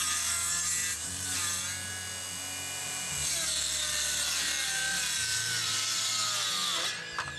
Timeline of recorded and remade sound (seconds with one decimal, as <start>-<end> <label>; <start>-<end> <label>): 0.0-0.8 recorded; 0.8-1.9 remade; 1.9-2.8 recorded; 2.8-6.1 remade; 6.1-7.4 recorded